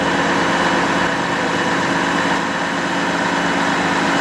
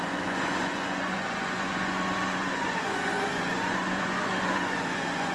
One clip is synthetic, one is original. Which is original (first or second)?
first